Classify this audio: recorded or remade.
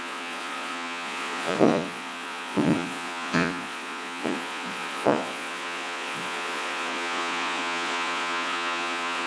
remade